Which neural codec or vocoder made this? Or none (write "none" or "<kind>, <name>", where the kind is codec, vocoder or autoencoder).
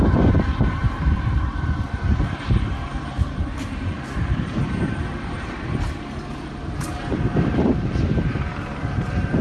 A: vocoder, BigVGAN v2